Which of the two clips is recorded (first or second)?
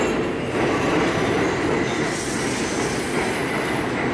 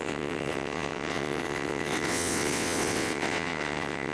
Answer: first